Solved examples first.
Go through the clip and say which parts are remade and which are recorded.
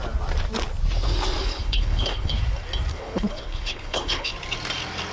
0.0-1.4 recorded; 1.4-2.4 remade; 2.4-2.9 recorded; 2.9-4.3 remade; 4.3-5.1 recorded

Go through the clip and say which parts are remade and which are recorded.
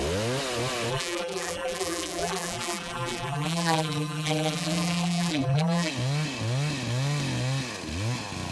0.0-0.9 recorded; 0.9-5.9 remade; 5.9-8.5 recorded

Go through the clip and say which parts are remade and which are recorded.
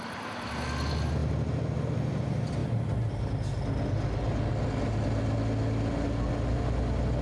0.0-7.2 recorded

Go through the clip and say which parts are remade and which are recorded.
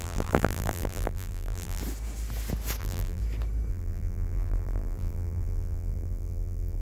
0.0-1.8 remade; 1.8-2.8 recorded; 2.8-3.2 remade; 3.2-3.7 recorded; 3.7-6.8 remade